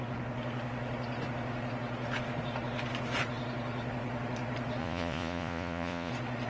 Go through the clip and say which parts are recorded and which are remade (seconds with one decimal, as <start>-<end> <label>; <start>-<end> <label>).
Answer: 0.0-4.8 recorded; 4.8-6.1 remade; 6.1-6.5 recorded